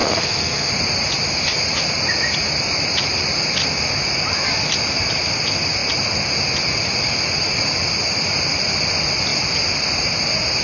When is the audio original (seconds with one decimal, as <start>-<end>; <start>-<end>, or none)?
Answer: 0.7-10.6